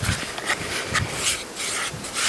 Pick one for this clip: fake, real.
real